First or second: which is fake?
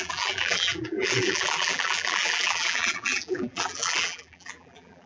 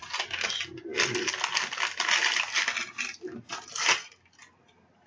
first